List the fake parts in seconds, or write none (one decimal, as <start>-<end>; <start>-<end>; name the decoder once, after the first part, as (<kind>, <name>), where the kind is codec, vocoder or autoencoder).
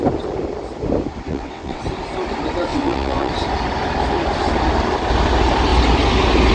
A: 1.3-1.8 (vocoder, WaveNeXt); 2.7-3.3